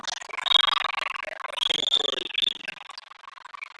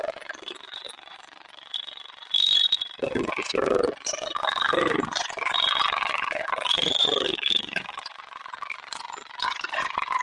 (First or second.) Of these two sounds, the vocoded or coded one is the second